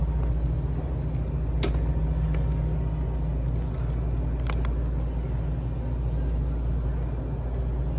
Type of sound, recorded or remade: recorded